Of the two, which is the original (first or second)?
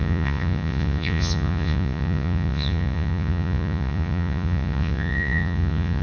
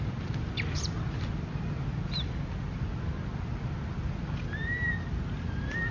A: second